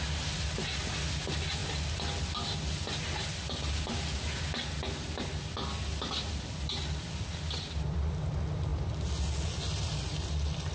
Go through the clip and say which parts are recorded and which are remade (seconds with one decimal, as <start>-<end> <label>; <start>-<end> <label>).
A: 0.0-10.7 recorded